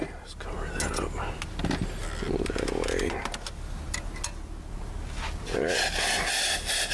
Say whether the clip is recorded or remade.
recorded